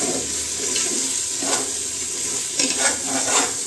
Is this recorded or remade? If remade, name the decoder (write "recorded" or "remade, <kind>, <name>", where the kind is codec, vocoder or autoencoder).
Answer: recorded